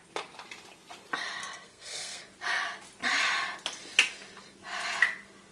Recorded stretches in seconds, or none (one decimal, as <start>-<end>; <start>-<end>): 0.0-1.4; 2.2-5.5